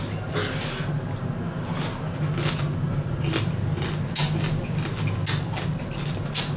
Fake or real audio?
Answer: real